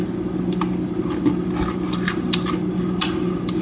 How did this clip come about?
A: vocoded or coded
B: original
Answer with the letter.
B